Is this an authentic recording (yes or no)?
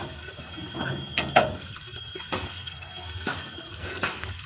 no